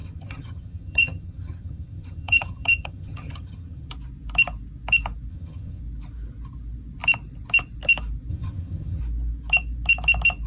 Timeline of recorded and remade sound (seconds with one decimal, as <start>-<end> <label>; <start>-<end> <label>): 0.0-3.9 remade; 3.9-5.3 recorded; 5.3-5.8 remade; 5.8-8.3 recorded; 8.3-9.0 remade; 9.0-10.5 recorded